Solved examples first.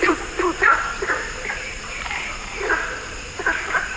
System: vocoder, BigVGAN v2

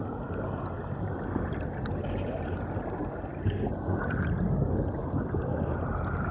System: none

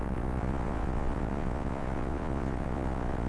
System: vocoder, Vocos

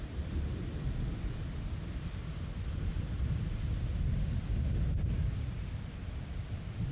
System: none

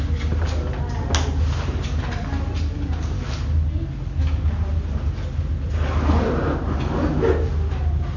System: none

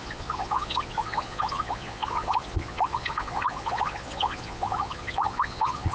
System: vocoder, Vocos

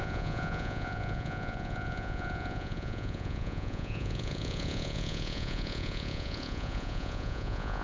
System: vocoder, Vocos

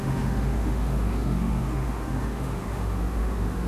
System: autoencoder, DAC-VAE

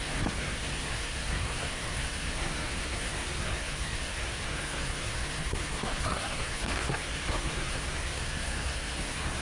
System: codec, SNAC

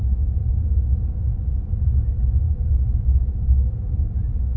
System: none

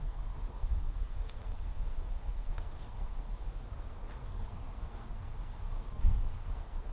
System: codec, SNAC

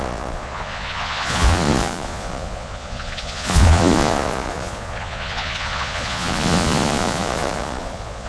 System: vocoder, Vocos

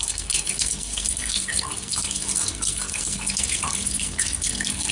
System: codec, SNAC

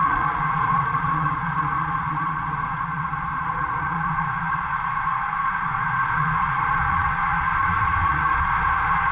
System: vocoder, Vocos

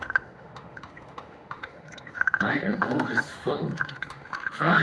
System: autoencoder, DAC-VAE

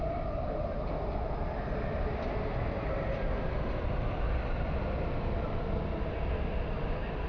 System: none